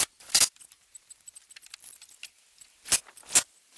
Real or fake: real